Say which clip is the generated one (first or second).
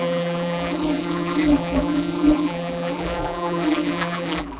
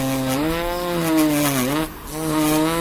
first